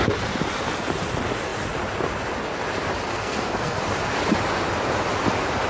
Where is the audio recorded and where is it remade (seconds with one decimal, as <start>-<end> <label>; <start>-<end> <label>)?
0.0-3.1 recorded; 3.1-3.8 remade; 3.8-5.7 recorded